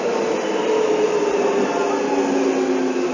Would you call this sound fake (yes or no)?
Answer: no